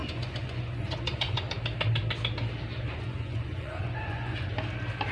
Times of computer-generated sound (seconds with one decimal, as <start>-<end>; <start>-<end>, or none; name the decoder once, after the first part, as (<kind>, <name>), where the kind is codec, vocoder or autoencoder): 0.0-1.4 (vocoder, Vocos); 2.7-4.5

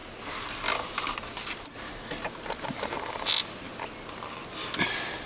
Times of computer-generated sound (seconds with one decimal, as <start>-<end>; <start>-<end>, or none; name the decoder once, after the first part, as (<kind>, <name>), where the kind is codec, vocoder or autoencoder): 0.0-2.2 (vocoder, BigVGAN v2)

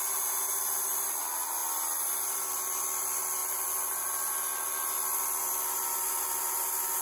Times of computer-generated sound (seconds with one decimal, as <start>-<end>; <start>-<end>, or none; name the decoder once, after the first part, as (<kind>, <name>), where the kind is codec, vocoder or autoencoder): none

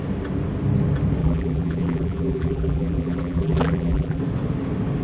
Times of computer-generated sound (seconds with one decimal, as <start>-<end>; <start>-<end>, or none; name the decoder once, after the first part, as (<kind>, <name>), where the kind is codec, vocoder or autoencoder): 1.2-4.2 (vocoder, BigVGAN v2)

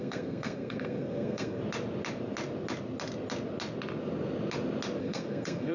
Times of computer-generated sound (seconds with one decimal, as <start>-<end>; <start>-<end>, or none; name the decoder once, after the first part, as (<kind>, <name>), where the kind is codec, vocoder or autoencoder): 0.0-1.6 (codec, SNAC); 5.0-5.7

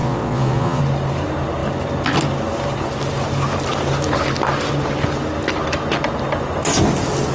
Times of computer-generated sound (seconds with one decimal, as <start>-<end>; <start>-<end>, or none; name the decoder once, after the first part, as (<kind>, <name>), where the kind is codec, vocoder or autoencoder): 0.0-0.8 (vocoder, Vocos)

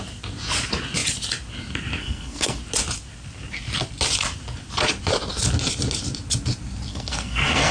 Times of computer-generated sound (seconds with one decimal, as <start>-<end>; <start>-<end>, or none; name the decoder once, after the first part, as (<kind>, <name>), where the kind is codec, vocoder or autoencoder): 2.0-2.6 (codec, SNAC); 6.9-7.7

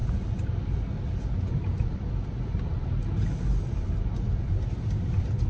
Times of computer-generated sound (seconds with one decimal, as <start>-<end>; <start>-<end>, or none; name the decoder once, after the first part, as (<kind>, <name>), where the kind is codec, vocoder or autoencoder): none